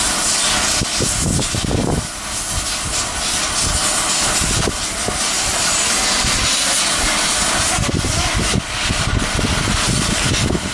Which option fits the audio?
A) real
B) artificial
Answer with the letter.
A